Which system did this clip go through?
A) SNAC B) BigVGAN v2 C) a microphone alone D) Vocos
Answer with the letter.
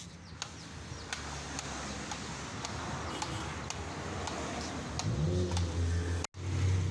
C